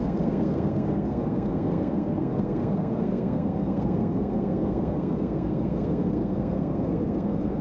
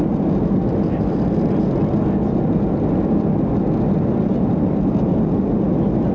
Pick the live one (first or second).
second